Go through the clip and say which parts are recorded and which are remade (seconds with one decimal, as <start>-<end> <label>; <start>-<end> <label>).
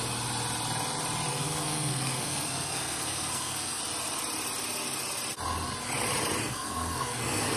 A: 0.0-1.3 recorded; 1.3-3.8 remade; 3.8-6.4 recorded; 6.4-7.6 remade